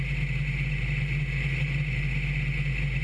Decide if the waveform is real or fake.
real